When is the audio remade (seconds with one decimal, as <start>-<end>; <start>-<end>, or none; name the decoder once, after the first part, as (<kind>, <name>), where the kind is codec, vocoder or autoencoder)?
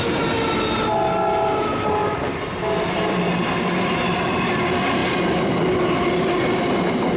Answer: none